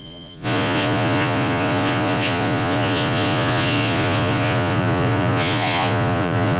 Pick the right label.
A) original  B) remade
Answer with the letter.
B